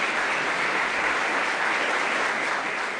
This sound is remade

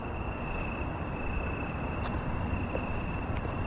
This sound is remade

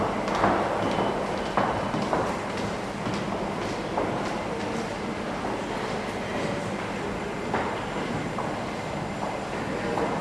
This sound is recorded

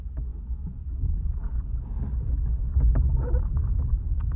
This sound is recorded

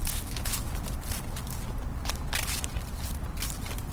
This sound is recorded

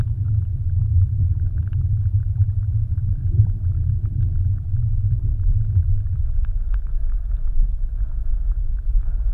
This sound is remade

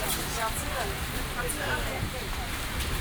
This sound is remade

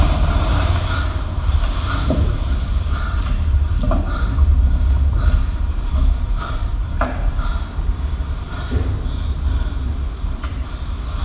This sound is remade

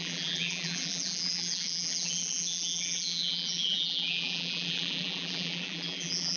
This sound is remade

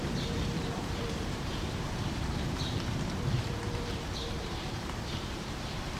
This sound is remade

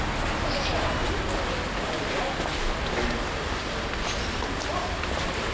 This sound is recorded